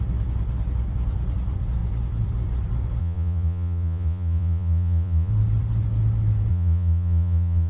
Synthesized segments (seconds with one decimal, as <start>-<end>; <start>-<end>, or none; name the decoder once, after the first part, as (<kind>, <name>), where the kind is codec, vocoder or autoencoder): 3.0-5.3 (vocoder, Vocos); 6.5-7.7